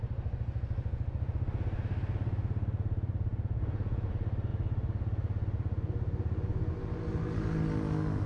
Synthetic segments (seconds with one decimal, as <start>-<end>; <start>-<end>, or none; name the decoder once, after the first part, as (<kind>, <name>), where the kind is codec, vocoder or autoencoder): 3.3-4.1 (vocoder, Vocos)